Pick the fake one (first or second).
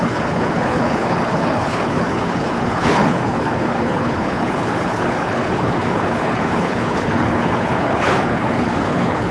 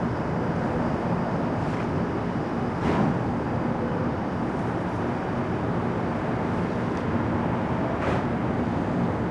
first